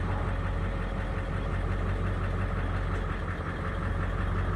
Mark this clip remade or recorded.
recorded